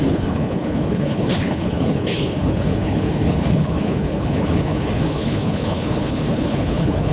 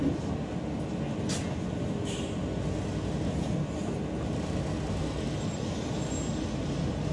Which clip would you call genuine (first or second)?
second